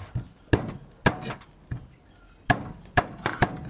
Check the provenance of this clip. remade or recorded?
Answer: recorded